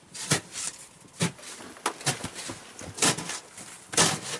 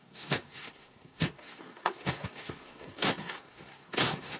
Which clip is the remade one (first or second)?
second